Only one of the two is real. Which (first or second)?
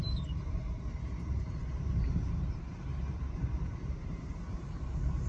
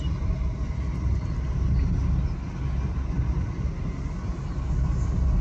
second